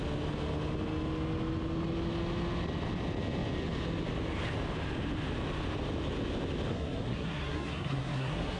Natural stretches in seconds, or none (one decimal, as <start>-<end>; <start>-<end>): 0.0-6.7